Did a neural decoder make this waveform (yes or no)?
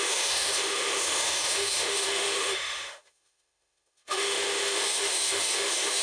yes